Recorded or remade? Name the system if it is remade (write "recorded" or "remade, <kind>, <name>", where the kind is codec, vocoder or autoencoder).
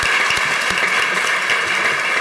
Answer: recorded